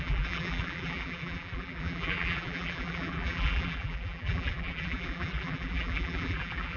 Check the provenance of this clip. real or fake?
fake